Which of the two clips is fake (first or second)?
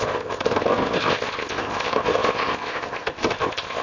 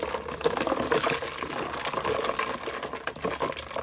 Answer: first